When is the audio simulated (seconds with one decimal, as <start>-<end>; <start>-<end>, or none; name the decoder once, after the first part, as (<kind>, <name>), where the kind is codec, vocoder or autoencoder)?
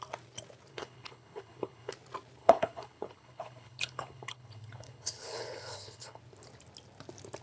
0.7-1.9 (codec, HILCodec); 2.4-6.2